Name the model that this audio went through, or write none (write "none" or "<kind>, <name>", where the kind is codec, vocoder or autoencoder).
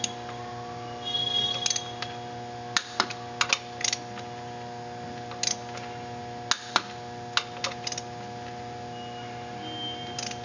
none